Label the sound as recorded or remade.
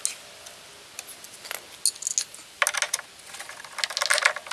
recorded